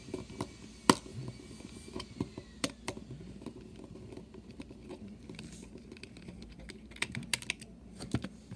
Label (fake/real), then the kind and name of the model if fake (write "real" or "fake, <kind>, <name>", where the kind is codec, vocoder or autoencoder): real